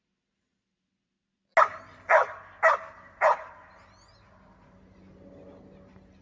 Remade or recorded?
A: recorded